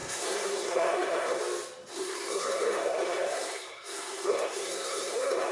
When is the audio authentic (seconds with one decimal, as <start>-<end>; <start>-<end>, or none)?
1.4-1.9